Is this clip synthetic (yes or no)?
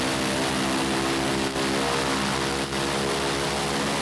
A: no